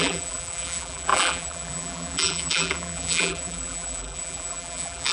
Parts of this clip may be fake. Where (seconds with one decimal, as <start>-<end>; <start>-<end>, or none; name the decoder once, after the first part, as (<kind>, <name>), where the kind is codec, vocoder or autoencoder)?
0.0-5.1 (vocoder, BigVGAN v2)